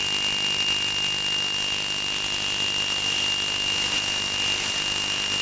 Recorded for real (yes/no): yes